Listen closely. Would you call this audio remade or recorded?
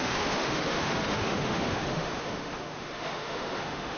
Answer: remade